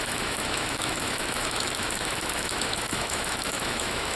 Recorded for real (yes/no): no